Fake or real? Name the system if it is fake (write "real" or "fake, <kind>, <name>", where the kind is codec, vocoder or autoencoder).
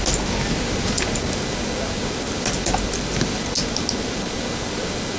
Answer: real